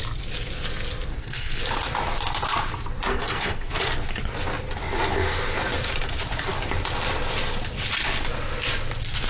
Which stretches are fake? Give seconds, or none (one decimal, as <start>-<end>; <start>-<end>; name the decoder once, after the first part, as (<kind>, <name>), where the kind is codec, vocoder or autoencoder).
1.1-1.6 (codec, SNAC); 3.1-3.7